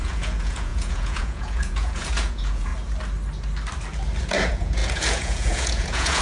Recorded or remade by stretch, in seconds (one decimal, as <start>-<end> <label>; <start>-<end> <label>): 0.0-2.7 remade; 2.7-4.2 recorded; 4.2-6.2 remade